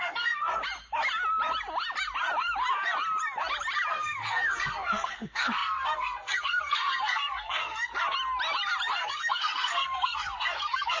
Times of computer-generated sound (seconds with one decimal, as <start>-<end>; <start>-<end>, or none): 0.0-0.6; 3.9-7.9; 8.9-11.0